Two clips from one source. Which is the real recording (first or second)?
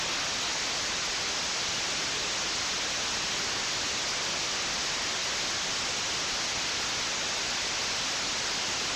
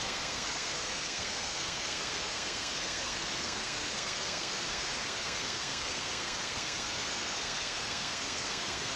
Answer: first